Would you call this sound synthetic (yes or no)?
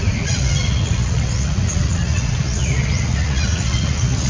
yes